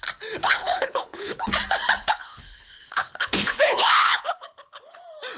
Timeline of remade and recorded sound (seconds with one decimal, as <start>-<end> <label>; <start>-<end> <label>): 0.0-0.4 recorded; 0.4-1.5 remade; 1.5-2.0 recorded; 2.0-5.0 remade; 5.0-5.4 recorded